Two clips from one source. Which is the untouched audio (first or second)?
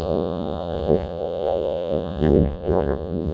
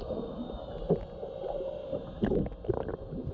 second